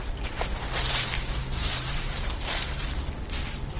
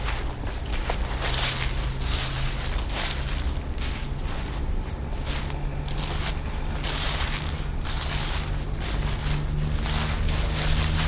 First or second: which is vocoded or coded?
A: first